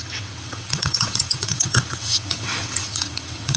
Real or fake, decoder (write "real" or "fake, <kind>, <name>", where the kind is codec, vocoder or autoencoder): fake, vocoder, WaveNeXt